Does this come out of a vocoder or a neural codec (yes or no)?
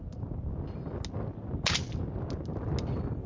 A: no